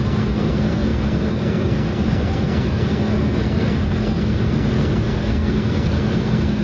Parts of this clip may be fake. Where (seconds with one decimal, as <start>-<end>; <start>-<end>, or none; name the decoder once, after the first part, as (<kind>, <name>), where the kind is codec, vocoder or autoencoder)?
0.0-6.6 (codec, SNAC)